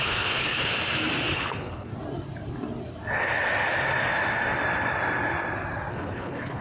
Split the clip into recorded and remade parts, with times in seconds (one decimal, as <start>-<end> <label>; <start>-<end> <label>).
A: 0.0-0.7 remade; 0.7-1.3 recorded; 1.3-1.9 remade; 1.9-5.9 recorded; 5.9-6.6 remade